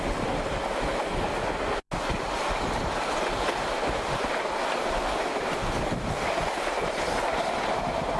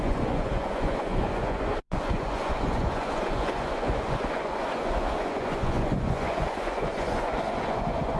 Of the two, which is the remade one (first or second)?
second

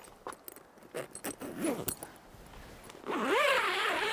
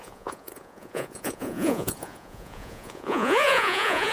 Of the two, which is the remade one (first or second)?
second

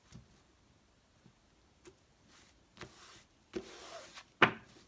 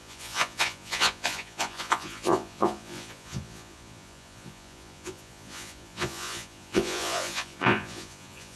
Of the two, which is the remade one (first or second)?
second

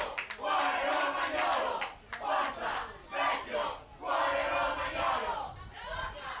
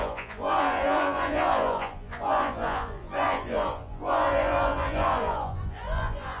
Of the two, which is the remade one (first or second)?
second